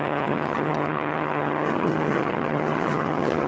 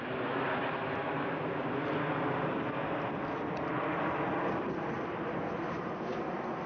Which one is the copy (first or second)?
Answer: first